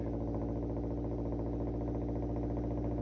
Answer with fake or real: real